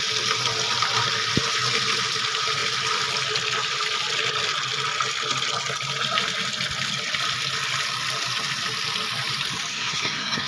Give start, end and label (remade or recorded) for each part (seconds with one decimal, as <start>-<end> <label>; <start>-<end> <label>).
0.0-9.7 recorded; 9.7-10.5 remade